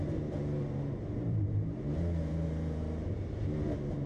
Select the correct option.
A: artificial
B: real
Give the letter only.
A